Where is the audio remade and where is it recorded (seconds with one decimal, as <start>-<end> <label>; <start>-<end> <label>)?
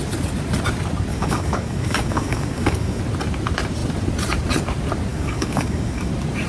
0.0-1.1 recorded; 1.1-3.0 remade; 3.0-5.1 recorded; 5.1-6.1 remade; 6.1-6.5 recorded